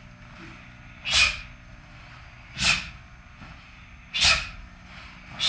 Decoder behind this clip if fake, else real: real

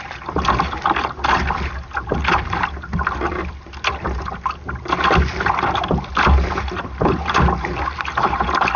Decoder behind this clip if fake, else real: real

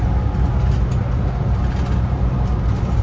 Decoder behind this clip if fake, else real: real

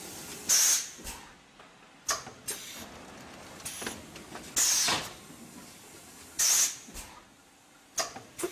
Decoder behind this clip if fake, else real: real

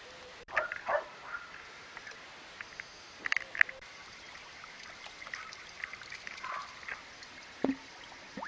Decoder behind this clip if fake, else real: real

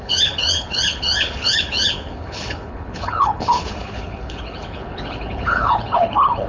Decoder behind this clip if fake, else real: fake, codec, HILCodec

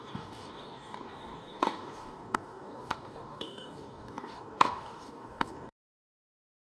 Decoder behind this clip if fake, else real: fake, codec, DAC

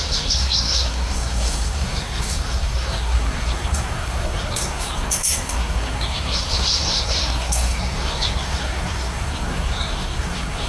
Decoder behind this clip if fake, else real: fake, codec, SNAC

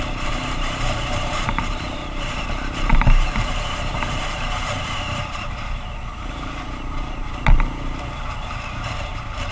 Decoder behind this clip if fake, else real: fake, vocoder, BigVGAN v2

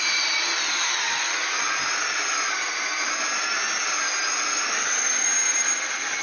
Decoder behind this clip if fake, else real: real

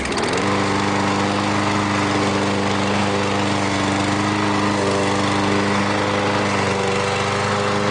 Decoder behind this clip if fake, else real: real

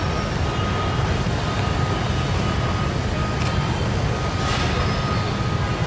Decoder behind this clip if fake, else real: real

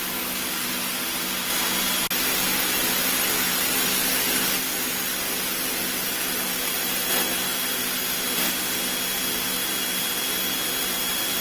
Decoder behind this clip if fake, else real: real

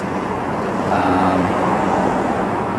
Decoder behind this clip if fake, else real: fake, vocoder, Vocos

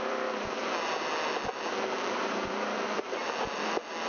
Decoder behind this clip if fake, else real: fake, vocoder, BigVGAN v2